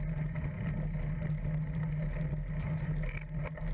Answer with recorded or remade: recorded